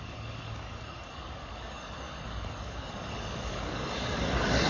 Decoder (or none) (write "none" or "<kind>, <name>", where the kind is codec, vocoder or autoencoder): codec, DAC